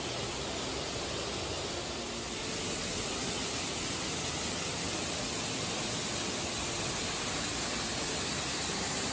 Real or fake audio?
real